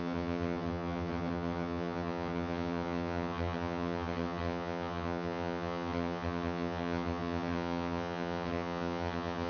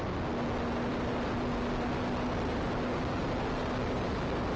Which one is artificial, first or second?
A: first